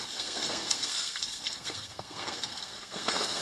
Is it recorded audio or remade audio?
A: remade